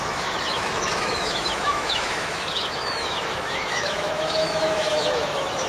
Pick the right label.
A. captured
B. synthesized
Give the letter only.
B